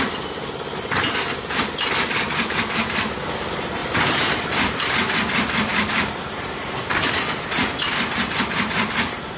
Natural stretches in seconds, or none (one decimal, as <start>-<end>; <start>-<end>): 0.0-3.8; 4.8-5.7; 6.9-9.4